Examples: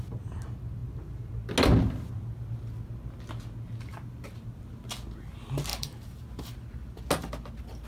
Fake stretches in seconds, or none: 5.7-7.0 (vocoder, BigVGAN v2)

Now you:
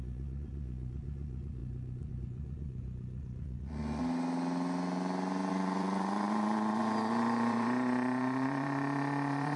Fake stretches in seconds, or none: 0.0-4.0 (vocoder, Vocos); 5.5-9.6